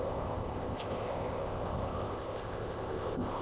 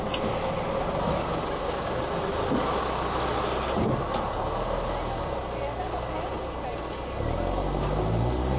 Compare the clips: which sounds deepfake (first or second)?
first